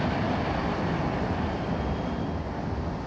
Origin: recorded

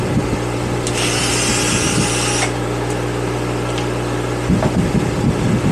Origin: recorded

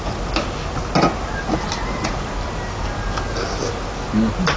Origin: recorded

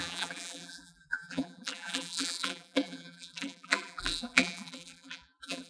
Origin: remade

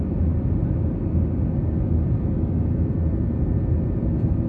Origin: recorded